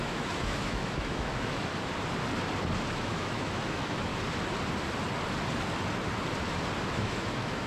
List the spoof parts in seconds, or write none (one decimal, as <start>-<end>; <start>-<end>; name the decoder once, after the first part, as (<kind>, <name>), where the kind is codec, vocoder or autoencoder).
0.0-1.7 (autoencoder, DAC-VAE); 2.9-4.1; 6.9-7.7